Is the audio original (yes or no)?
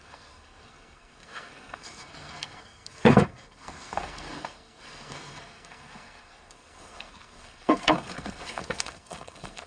no